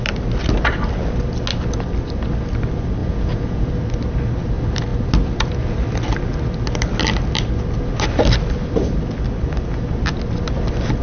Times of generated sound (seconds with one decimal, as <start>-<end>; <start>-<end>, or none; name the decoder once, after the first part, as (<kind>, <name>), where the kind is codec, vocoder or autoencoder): 3.0-3.7 (vocoder, Vocos)